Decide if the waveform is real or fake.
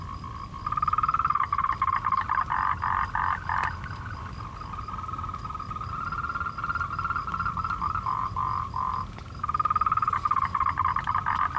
real